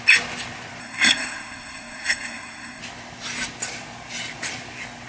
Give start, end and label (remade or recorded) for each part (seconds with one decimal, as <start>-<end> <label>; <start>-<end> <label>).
0.0-0.8 recorded; 0.8-2.8 remade; 2.8-5.1 recorded